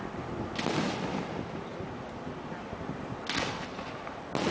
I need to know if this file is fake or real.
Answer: real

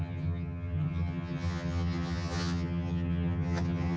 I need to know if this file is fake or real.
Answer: fake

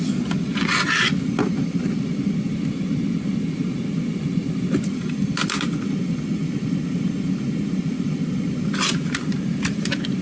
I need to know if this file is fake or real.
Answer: real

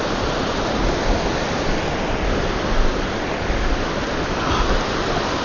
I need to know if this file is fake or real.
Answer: real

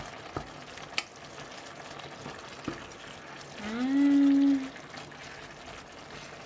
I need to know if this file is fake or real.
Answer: real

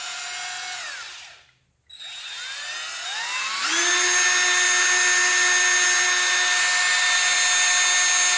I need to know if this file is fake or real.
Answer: real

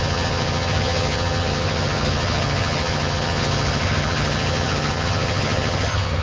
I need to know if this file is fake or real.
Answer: fake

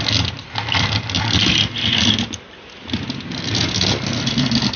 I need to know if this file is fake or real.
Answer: real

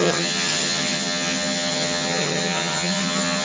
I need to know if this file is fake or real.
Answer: fake